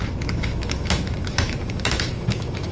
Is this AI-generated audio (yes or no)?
yes